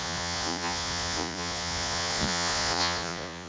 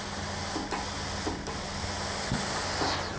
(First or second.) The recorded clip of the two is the second